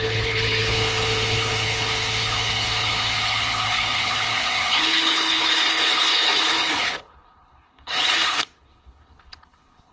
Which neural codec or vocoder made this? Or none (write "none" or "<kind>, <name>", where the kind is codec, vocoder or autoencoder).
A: codec, HILCodec